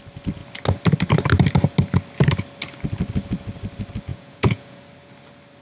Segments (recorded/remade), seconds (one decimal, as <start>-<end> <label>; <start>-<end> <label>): 0.0-4.1 recorded; 4.1-4.8 remade; 4.8-5.6 recorded